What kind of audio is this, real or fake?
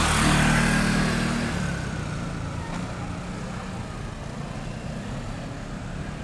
real